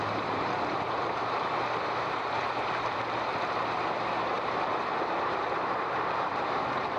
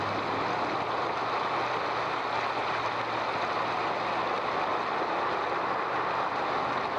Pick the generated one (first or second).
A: first